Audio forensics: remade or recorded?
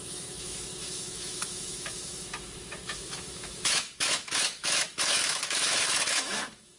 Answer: remade